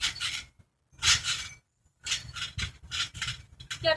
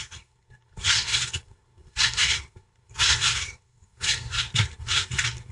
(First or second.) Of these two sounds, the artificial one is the second